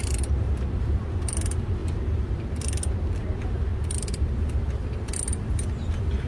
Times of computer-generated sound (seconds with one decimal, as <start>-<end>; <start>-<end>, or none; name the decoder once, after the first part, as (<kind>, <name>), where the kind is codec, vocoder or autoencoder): 0.0-1.0 (vocoder, BigVGAN v2); 1.8-2.3